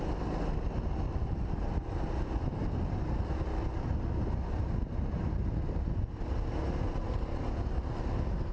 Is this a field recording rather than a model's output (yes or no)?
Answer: yes